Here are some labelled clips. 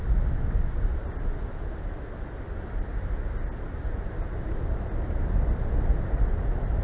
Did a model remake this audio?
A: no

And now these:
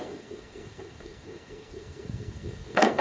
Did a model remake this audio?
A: yes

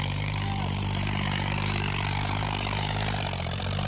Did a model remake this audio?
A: yes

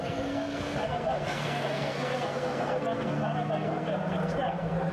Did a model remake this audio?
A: yes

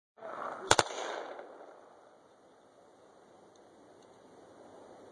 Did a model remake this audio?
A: no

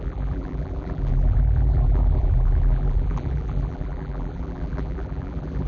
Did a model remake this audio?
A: yes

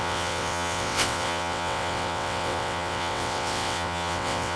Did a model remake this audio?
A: yes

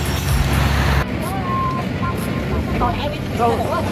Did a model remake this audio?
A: no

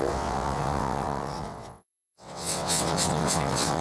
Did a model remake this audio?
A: yes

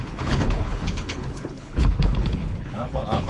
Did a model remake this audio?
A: yes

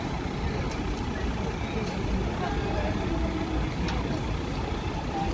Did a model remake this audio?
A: no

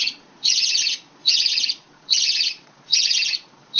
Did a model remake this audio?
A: yes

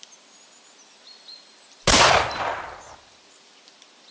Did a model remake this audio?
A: no